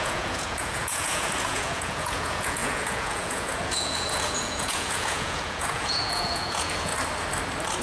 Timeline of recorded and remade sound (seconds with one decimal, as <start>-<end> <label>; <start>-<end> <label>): 0.0-6.9 remade; 6.9-7.8 recorded